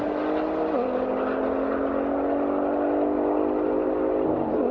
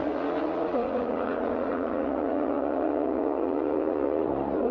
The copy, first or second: second